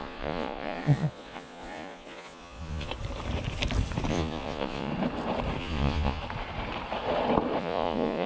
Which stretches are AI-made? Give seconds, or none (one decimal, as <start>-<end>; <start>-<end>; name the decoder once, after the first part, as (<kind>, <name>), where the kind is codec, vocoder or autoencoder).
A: 0.0-2.9 (vocoder, Vocos); 4.1-4.9; 5.6-6.2; 7.6-8.3